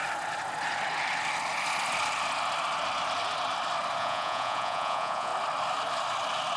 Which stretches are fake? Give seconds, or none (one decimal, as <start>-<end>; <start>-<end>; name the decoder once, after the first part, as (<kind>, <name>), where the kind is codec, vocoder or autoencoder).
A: 4.0-5.3 (vocoder, Vocos)